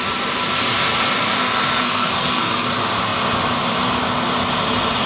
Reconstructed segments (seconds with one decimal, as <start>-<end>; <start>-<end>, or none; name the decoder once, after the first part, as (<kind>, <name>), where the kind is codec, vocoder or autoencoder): 1.4-2.7 (codec, SNAC)